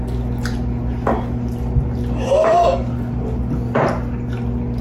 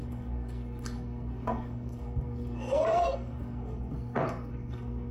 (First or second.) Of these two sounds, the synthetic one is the second